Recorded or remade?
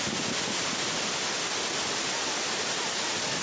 recorded